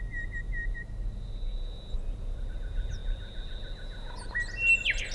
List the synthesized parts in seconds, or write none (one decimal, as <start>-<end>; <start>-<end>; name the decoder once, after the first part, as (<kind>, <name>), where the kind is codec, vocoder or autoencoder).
none